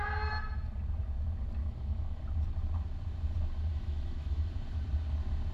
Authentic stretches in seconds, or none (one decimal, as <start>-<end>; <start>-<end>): 0.0-1.6; 2.2-3.7; 4.5-5.5